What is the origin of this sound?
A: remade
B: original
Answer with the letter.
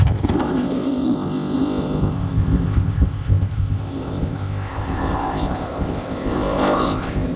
A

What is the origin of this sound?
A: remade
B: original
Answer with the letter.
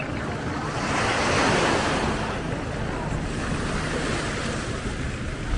B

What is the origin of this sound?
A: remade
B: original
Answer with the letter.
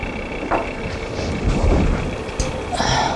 B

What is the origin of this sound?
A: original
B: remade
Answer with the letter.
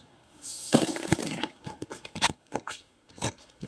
B